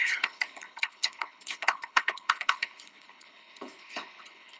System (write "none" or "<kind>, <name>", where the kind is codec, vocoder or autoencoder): codec, HILCodec